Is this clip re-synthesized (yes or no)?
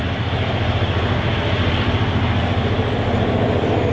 no